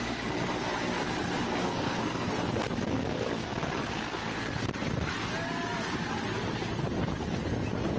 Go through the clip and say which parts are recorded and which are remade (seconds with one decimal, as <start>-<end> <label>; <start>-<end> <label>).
0.0-1.6 recorded; 1.6-2.3 remade; 2.3-8.0 recorded